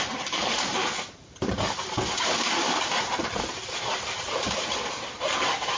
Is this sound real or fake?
fake